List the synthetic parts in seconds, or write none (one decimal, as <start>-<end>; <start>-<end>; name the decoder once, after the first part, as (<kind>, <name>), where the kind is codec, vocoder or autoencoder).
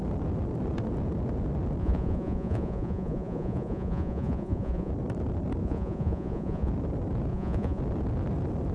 1.8-4.9 (vocoder, Vocos); 5.6-6.7; 7.3-7.8